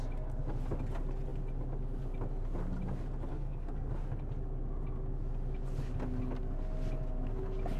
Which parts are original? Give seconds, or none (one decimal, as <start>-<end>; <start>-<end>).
0.0-3.3; 3.9-7.8